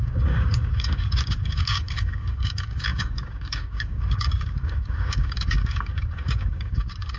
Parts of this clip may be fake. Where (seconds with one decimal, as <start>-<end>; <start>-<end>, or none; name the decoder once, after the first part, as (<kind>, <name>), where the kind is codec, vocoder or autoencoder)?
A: 0.0-7.2 (codec, DAC)